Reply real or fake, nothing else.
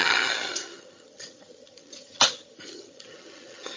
fake